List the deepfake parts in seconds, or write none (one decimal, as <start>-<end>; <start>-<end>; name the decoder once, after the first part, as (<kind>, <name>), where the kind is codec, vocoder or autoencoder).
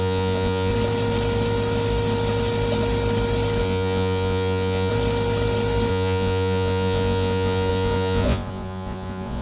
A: 0.0-0.7 (vocoder, Vocos); 3.6-4.9; 5.9-9.4